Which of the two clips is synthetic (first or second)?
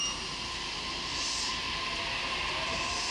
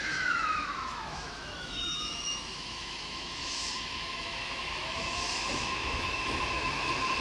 second